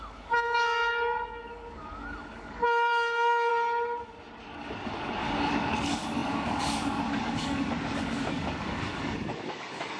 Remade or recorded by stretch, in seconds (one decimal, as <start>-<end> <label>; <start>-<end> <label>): 0.0-3.5 remade; 3.5-4.4 recorded; 4.4-10.0 remade